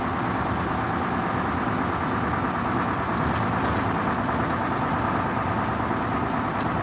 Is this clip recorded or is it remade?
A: recorded